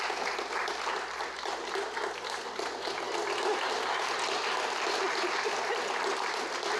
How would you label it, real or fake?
real